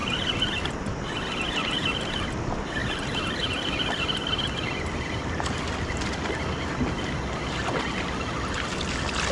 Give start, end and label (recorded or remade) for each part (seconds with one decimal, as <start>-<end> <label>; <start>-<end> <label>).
0.0-9.3 recorded